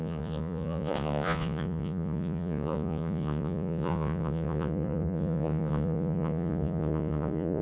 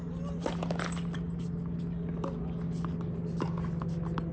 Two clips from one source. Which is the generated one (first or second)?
first